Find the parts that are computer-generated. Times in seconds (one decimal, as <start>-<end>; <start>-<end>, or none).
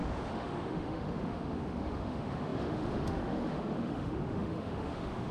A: 0.0-5.3